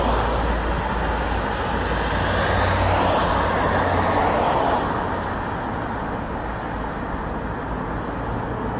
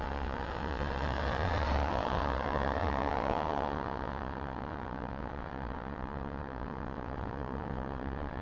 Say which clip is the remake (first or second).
second